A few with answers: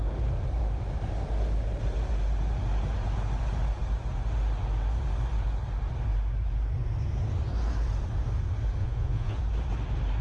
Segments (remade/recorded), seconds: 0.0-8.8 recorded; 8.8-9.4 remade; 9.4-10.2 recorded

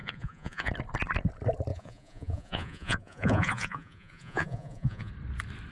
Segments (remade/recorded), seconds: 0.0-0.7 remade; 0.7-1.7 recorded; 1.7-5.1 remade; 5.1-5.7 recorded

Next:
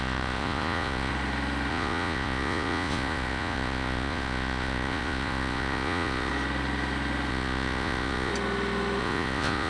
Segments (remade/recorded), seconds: 0.0-1.1 remade; 1.1-1.7 recorded; 1.7-6.3 remade; 6.3-7.3 recorded; 7.3-8.3 remade; 8.3-9.0 recorded; 9.0-9.7 remade

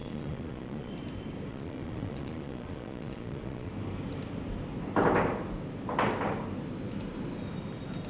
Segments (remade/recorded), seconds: 0.0-0.9 remade; 0.9-1.5 recorded; 1.5-3.7 remade; 3.7-8.1 recorded

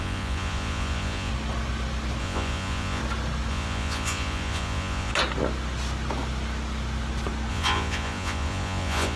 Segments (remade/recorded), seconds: 0.0-1.3 remade; 1.3-2.2 recorded; 2.2-3.0 remade; 3.0-3.5 recorded; 3.5-5.1 remade; 5.1-7.5 recorded; 7.5-9.2 remade